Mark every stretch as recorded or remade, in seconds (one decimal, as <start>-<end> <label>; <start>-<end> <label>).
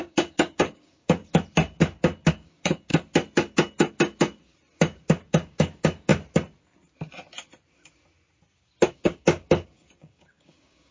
0.0-1.2 remade; 1.2-2.3 recorded; 2.3-2.9 remade; 2.9-5.3 recorded; 5.3-6.1 remade; 6.1-8.9 recorded; 8.9-10.9 remade